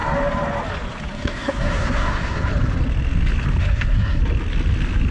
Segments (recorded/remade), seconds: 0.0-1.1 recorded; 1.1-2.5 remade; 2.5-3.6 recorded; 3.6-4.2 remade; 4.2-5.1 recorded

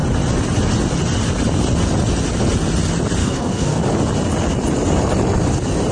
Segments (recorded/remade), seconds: 0.0-3.2 recorded; 3.2-3.8 remade; 3.8-5.9 recorded

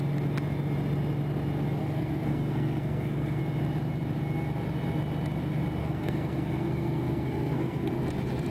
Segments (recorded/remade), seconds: 0.0-1.8 recorded; 1.8-3.4 remade; 3.4-5.8 recorded; 5.8-7.9 remade; 7.9-8.5 recorded

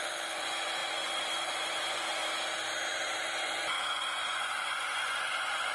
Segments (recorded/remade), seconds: 0.0-2.2 remade; 2.2-3.2 recorded; 3.2-5.7 remade